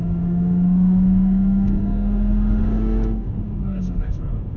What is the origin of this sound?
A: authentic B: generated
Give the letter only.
B